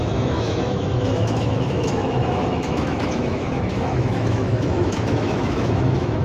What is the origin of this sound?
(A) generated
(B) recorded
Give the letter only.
A